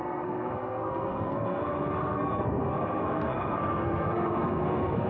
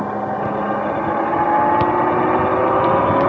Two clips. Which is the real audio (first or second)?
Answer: second